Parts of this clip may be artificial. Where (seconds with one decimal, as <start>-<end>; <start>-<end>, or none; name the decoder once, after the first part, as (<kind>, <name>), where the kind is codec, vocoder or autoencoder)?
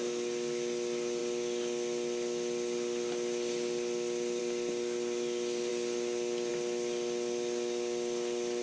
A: none